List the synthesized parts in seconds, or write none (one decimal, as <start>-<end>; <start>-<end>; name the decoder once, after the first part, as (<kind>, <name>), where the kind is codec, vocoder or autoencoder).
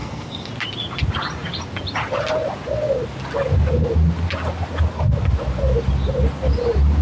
0.0-0.5 (codec, SNAC)